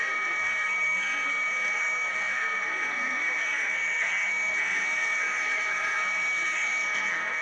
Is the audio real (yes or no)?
no